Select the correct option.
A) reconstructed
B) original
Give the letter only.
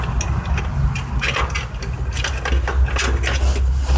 B